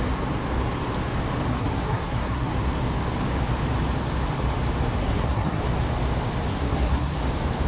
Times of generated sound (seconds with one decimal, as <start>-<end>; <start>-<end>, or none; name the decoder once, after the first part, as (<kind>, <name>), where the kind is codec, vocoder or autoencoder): 1.5-2.5 (codec, SNAC); 5.0-5.6; 6.5-7.2